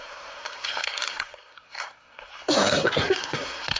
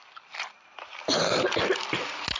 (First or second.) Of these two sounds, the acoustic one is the second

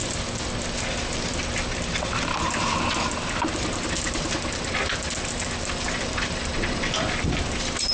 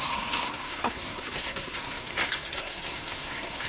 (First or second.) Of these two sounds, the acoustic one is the first